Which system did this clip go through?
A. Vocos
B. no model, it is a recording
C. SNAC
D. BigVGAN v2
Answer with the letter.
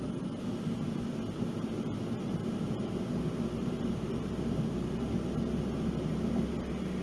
B